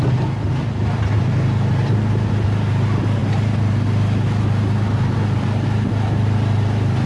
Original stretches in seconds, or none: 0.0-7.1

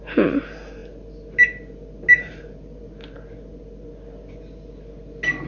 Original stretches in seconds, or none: 0.0-5.5

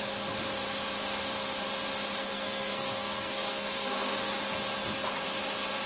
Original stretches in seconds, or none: 0.0-2.2; 4.3-5.9

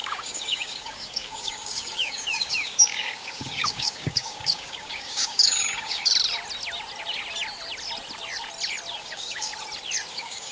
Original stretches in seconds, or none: 6.1-9.0; 9.5-10.1